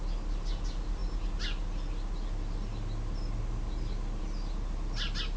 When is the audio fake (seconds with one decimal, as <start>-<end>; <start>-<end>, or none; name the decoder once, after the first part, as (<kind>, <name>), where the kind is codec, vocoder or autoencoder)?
none